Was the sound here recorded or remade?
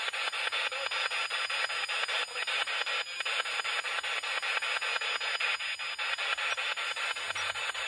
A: recorded